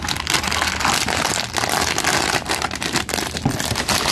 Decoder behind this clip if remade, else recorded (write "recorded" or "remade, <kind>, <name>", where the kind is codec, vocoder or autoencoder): recorded